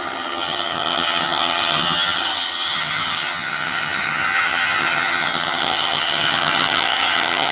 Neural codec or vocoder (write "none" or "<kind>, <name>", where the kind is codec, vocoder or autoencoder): vocoder, HiFi-GAN